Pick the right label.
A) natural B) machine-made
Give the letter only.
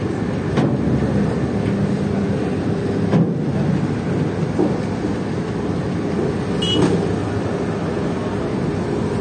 A